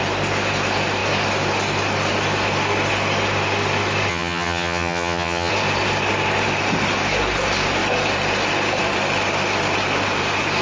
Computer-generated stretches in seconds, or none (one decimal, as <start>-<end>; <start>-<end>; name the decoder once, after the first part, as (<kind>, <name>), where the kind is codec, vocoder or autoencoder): 4.1-5.5 (vocoder, HiFi-GAN)